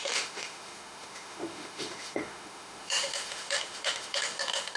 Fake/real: fake